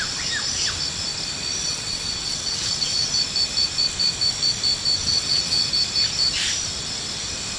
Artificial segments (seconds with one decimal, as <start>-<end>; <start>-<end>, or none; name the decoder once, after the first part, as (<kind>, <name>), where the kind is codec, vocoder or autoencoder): 1.6-3.1 (vocoder, WaveNeXt); 5.0-5.7